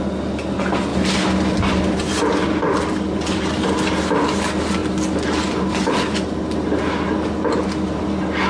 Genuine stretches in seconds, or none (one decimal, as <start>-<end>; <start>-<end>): 0.0-8.5